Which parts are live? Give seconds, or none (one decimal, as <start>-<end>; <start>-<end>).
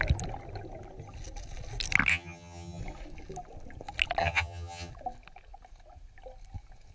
0.0-2.1; 2.8-4.2; 4.9-6.9